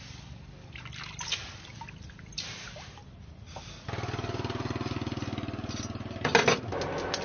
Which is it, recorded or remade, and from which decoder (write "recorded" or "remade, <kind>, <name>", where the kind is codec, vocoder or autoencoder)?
recorded